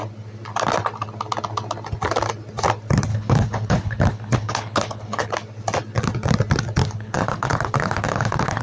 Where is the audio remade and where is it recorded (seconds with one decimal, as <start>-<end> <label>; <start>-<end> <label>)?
0.0-3.1 recorded; 3.1-5.3 remade; 5.3-6.8 recorded; 6.8-8.6 remade